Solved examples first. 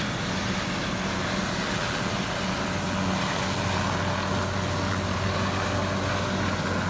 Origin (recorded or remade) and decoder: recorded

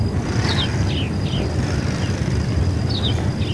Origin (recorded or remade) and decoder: recorded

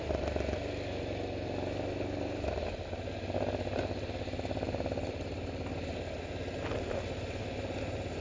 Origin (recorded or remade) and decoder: recorded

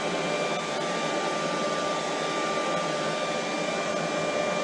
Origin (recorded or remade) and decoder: recorded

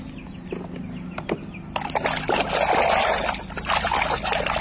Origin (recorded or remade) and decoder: recorded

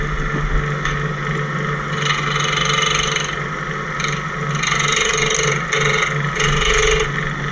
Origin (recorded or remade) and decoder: recorded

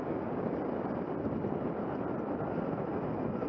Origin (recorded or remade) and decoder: recorded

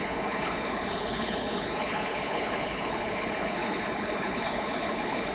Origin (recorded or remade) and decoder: remade, codec, HILCodec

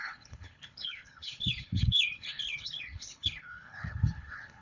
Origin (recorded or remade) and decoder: remade, codec, HILCodec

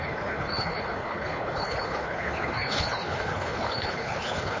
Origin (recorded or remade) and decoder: remade, codec, HILCodec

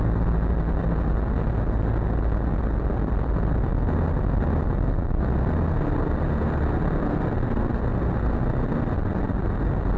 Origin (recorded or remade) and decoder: recorded